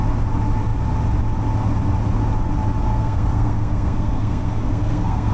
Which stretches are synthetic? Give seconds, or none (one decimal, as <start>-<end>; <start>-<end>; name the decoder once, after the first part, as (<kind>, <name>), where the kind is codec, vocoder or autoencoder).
2.9-5.3 (codec, SNAC)